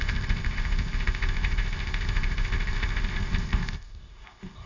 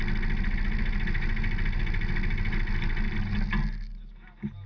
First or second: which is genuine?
second